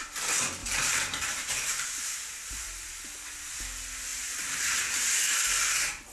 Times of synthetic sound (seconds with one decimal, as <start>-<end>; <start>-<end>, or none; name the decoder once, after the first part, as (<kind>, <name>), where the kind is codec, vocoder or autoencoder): 0.6-2.9 (vocoder, BigVGAN v2); 4.1-5.2